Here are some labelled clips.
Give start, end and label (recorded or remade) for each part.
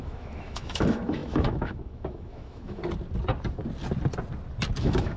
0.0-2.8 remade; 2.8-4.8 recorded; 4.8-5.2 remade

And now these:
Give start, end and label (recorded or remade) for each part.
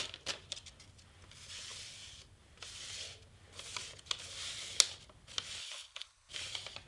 0.0-5.6 recorded; 5.6-6.3 remade; 6.3-6.9 recorded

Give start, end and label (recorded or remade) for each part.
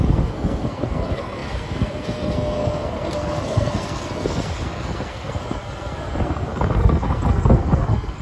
0.0-8.2 remade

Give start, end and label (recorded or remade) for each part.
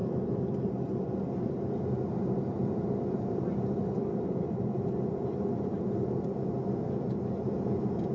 0.0-8.1 recorded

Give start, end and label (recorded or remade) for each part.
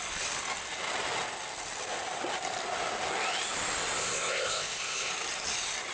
0.0-4.0 recorded; 4.0-5.1 remade; 5.1-5.9 recorded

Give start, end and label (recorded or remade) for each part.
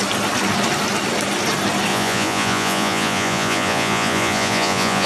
0.0-1.9 recorded; 1.9-5.1 remade